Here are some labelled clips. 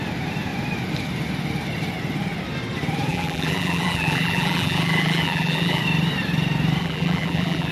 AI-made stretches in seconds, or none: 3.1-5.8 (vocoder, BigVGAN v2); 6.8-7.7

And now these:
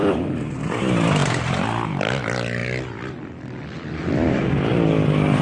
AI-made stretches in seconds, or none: 0.0-2.6 (vocoder, BigVGAN v2); 4.4-5.4

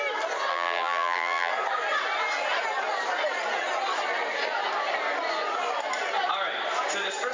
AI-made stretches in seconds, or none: 0.5-1.5 (vocoder, BigVGAN v2)

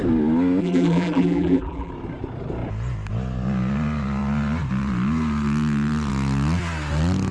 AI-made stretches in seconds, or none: 0.6-1.9 (vocoder, BigVGAN v2)

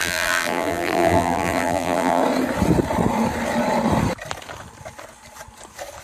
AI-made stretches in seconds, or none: 0.0-2.2 (vocoder, BigVGAN v2)

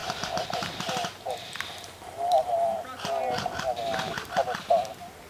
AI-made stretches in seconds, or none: 0.0-3.2 (vocoder, BigVGAN v2)